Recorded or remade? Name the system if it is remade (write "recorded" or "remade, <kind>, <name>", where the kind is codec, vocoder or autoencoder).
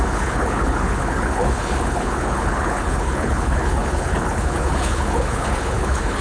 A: remade, codec, HILCodec